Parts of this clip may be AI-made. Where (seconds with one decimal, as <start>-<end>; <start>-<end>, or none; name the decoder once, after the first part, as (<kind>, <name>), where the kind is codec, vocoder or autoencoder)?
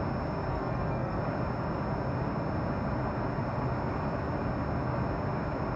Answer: 0.5-1.2 (codec, SNAC)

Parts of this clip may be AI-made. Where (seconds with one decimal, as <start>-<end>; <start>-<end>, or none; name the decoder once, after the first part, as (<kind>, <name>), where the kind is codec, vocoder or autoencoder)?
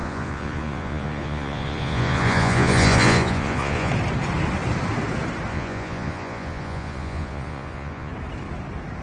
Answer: 0.0-3.9 (vocoder, Vocos); 5.5-8.1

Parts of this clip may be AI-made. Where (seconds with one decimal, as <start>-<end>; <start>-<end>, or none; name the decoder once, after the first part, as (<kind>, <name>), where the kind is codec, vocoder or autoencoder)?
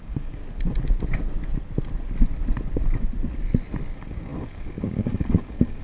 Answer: 0.0-0.4 (codec, DAC); 3.9-5.8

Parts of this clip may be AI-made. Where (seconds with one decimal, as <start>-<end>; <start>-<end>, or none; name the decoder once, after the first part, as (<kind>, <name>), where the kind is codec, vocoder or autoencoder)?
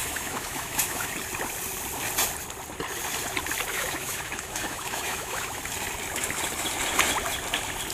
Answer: 0.0-1.1 (autoencoder, DAC-VAE); 3.7-5.6